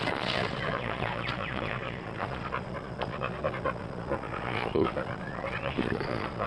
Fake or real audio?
fake